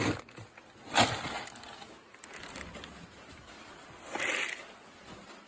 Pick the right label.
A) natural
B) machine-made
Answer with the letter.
A